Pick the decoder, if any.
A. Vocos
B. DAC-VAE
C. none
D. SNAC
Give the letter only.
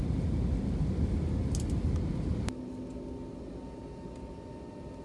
C